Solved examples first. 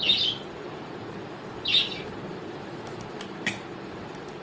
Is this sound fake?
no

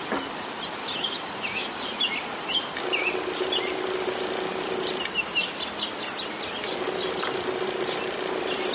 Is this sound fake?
no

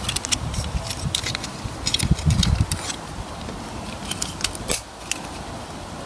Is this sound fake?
no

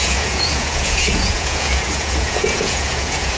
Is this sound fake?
yes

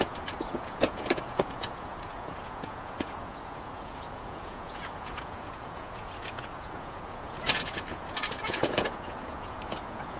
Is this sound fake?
yes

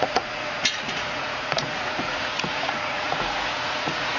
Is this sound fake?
yes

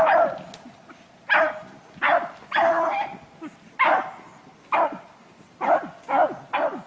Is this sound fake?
no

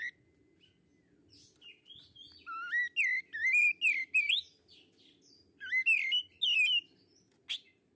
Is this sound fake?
no